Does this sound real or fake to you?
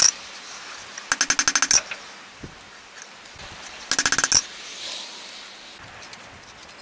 real